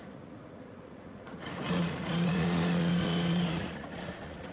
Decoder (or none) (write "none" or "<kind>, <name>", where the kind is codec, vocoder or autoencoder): vocoder, Vocos